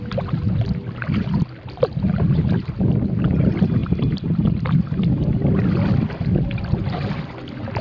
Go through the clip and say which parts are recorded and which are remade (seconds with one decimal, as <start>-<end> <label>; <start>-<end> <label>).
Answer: 0.0-7.8 recorded